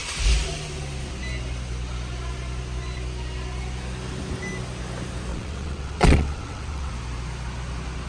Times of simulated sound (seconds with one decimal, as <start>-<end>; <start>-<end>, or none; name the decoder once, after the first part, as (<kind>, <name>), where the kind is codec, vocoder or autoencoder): 5.3-6.9 (vocoder, WaveNeXt)